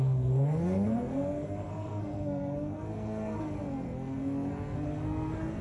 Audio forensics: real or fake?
fake